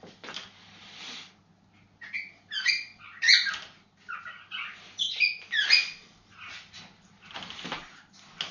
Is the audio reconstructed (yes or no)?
no